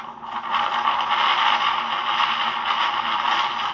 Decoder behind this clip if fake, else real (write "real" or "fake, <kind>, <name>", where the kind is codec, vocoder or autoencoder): real